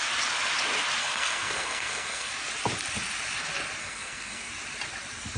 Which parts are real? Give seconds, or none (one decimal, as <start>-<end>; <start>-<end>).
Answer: 0.0-1.0; 2.3-3.8; 4.5-5.4